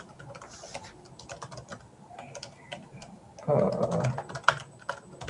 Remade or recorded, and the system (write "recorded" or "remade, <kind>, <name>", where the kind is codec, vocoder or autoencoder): recorded